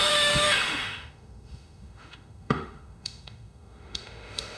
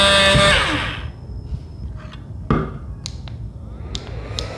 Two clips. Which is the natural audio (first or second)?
second